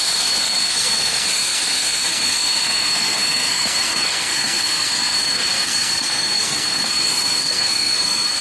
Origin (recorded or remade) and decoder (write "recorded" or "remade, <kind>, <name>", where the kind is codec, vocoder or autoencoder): remade, codec, SNAC